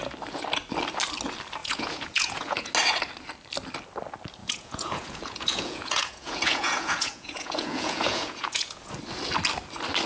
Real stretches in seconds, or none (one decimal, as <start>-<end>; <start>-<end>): 0.0-1.6; 2.7-4.4; 8.9-10.1